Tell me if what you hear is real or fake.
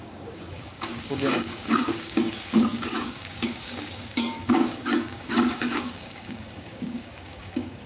fake